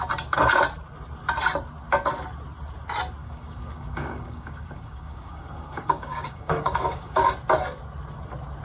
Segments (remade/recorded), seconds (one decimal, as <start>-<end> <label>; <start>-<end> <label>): 0.0-3.2 recorded; 3.2-7.3 remade; 7.3-8.6 recorded